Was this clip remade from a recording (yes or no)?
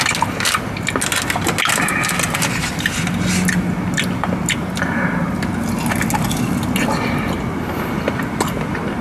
no